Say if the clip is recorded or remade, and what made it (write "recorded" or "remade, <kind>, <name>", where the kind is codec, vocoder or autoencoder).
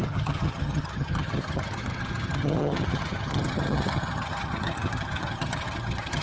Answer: remade, vocoder, HiFi-GAN